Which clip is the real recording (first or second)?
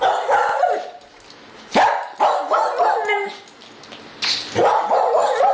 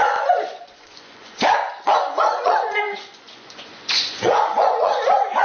first